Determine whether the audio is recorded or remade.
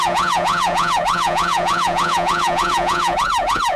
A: remade